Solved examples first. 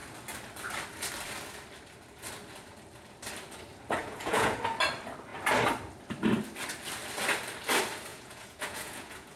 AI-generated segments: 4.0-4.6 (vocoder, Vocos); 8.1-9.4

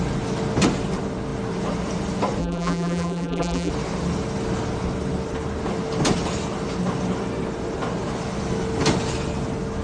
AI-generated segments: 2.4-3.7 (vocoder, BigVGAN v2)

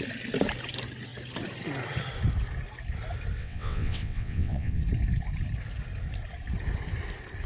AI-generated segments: 3.4-4.8 (vocoder, WaveNeXt)